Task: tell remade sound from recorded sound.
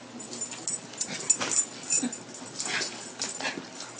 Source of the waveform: recorded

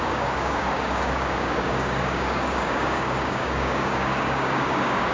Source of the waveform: remade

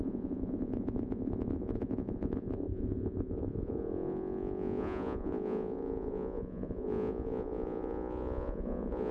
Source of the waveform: remade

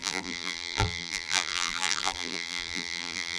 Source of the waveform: remade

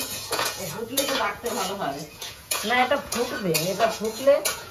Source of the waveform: remade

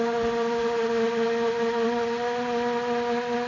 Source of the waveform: recorded